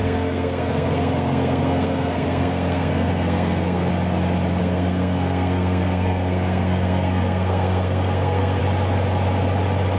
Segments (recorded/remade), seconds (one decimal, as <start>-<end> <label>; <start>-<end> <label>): 0.0-3.9 remade; 3.9-4.6 recorded; 4.6-8.6 remade; 8.6-10.0 recorded